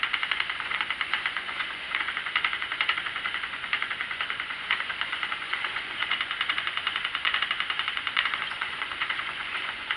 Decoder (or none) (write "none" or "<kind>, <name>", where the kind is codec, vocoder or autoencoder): vocoder, Vocos